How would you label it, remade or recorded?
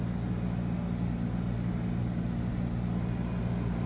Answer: recorded